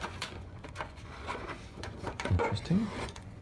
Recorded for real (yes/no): no